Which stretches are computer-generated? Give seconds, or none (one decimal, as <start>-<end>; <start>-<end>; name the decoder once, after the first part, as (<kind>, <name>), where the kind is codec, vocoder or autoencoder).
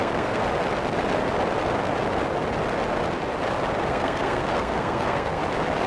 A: 0.0-0.4 (codec, SNAC); 3.9-5.4